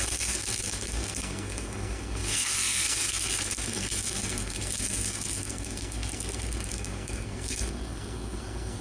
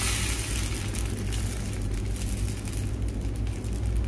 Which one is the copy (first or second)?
first